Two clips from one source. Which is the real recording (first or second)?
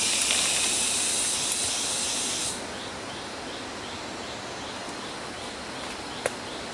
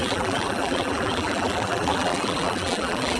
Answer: first